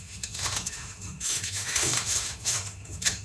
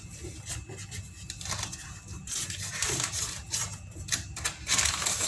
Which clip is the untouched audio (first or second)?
second